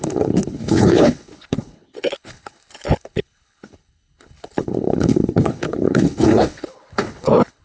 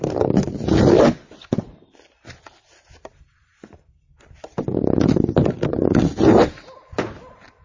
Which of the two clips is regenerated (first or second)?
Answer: first